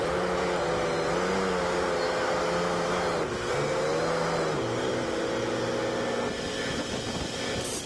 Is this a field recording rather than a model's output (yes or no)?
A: yes